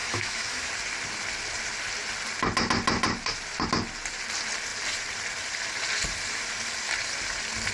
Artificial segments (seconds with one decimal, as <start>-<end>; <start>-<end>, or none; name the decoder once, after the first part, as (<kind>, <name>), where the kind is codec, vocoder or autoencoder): 0.0-0.7 (autoencoder, DAC-VAE)